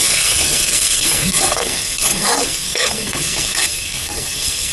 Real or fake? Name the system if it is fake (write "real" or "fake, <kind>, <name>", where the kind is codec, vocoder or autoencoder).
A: fake, codec, SNAC